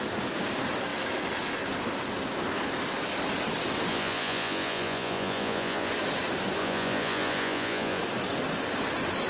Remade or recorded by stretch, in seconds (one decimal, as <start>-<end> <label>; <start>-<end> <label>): 0.0-3.9 recorded; 3.9-5.9 remade; 5.9-6.6 recorded; 6.6-8.0 remade; 8.0-9.3 recorded